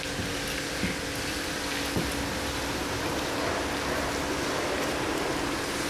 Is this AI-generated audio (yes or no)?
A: no